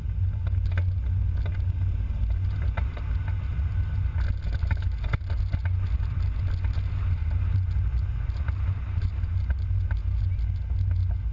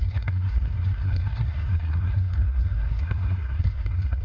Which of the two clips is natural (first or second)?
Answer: first